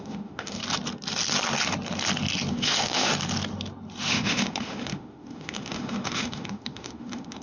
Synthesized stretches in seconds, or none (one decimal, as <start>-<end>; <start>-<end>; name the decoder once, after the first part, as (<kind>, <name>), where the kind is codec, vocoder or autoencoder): 0.0-0.6 (autoencoder, DAC-VAE); 2.5-3.1; 4.1-7.4